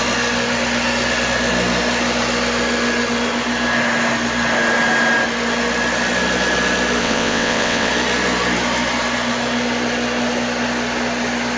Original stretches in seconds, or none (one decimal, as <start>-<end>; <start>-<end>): 0.0-7.0; 7.9-11.6